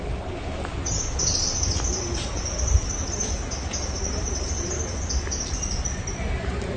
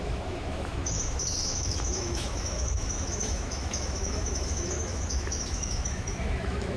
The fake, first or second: second